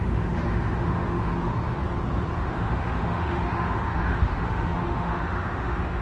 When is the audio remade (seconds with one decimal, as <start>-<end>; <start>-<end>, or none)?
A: 0.0-1.8; 2.4-6.0